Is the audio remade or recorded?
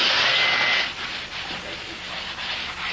recorded